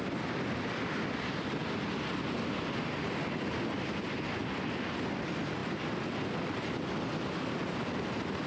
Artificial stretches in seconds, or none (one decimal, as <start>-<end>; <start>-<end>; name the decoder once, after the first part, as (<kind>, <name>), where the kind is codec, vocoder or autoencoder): none